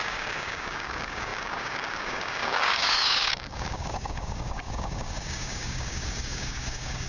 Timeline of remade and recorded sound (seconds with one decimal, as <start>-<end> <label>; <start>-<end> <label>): 0.0-7.1 remade